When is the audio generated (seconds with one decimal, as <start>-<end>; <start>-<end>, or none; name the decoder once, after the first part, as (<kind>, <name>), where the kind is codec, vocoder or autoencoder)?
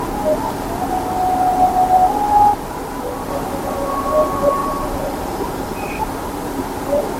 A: 4.6-6.0 (vocoder, BigVGAN v2)